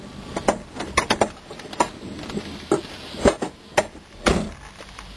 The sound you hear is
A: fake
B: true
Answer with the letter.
B